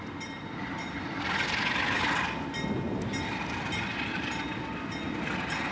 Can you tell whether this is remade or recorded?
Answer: recorded